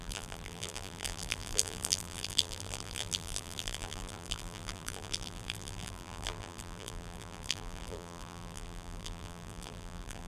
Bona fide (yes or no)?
no